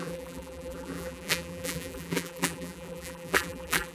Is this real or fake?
fake